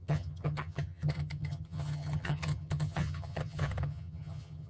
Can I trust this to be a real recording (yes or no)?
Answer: no